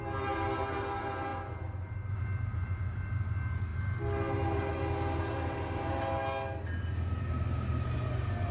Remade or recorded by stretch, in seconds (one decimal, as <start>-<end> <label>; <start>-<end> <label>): 0.0-8.5 recorded